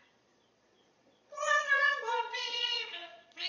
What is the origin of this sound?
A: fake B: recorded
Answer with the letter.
A